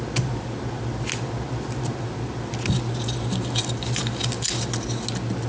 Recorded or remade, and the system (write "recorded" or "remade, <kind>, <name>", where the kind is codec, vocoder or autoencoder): recorded